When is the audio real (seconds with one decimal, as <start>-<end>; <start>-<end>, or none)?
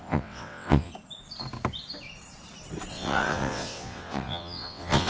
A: 0.9-2.9